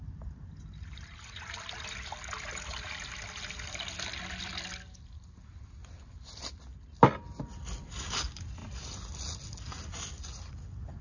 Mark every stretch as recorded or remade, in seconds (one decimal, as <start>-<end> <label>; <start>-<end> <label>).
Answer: 0.0-11.0 recorded